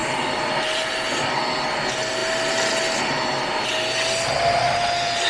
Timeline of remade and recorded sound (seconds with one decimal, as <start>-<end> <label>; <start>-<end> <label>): 0.0-0.9 remade; 0.9-5.3 recorded